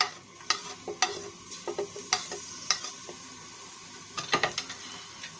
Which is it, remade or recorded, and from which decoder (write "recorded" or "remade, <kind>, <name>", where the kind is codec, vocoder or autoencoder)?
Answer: recorded